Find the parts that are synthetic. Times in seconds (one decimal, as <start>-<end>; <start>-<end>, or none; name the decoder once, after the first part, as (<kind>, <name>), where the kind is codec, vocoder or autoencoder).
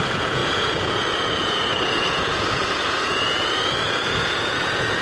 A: 0.0-5.0 (vocoder, Vocos)